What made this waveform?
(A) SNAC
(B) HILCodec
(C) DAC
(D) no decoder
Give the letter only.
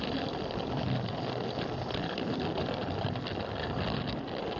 D